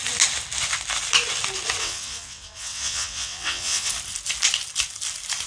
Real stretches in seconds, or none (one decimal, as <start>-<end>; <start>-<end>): 0.0-1.8; 3.9-5.5